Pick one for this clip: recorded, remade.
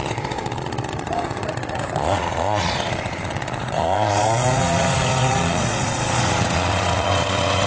remade